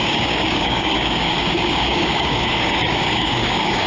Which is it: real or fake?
fake